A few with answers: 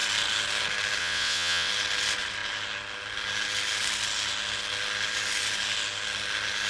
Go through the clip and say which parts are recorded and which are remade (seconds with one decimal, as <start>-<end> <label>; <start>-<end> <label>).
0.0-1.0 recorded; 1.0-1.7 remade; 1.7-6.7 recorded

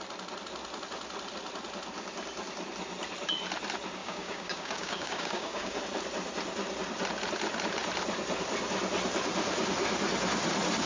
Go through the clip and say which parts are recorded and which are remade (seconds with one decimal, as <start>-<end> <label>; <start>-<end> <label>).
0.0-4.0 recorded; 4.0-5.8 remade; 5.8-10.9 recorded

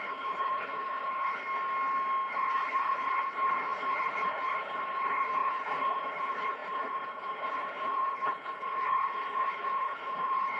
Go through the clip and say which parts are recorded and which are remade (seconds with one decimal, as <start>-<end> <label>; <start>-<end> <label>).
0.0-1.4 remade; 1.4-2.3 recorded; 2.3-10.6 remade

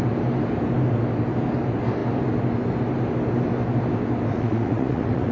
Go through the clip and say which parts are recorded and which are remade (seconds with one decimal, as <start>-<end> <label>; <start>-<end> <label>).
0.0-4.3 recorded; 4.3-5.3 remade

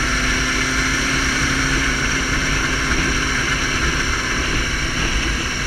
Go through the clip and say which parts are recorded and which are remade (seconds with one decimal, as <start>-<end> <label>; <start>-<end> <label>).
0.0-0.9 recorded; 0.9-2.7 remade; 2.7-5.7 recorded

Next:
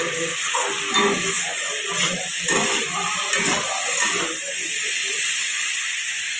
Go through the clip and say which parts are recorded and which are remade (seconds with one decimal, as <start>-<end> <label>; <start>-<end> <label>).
0.0-1.5 remade; 1.5-4.2 recorded; 4.2-5.0 remade; 5.0-5.8 recorded; 5.8-6.4 remade

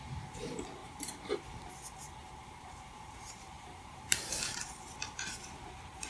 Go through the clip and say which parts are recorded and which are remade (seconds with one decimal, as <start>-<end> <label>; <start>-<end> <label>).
0.0-0.8 recorded; 0.8-1.4 remade; 1.4-2.2 recorded; 2.2-4.6 remade; 4.6-6.1 recorded

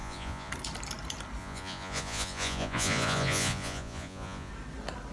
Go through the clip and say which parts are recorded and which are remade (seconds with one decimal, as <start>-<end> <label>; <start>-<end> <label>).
0.0-0.5 remade; 0.5-1.4 recorded; 1.4-4.5 remade; 4.5-5.1 recorded